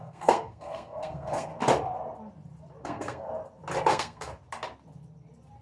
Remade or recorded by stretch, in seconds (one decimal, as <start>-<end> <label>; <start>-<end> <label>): 0.0-1.5 remade; 1.5-2.8 recorded; 2.8-3.3 remade; 3.3-3.9 recorded; 3.9-4.3 remade; 4.3-5.6 recorded